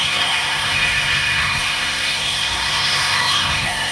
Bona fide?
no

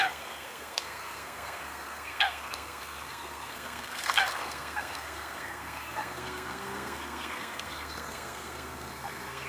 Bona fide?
no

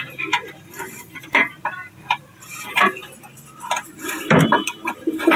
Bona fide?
no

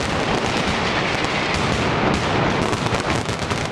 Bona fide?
yes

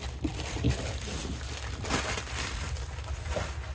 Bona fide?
no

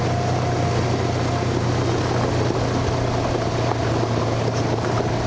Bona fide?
yes